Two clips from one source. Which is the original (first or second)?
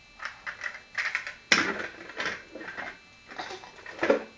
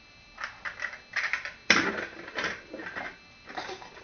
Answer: first